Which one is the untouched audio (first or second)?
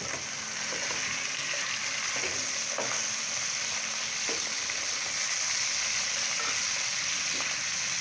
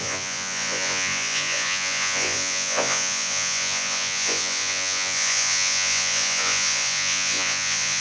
first